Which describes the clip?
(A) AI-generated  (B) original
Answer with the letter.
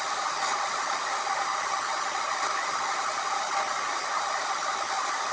B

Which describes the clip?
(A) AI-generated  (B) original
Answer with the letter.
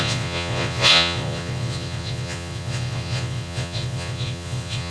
A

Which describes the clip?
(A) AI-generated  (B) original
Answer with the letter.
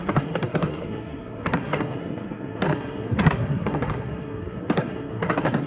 A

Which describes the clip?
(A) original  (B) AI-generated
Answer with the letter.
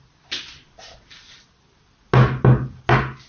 A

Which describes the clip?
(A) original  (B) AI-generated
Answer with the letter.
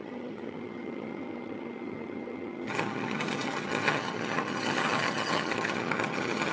B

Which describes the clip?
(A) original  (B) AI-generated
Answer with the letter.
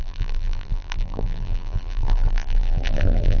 B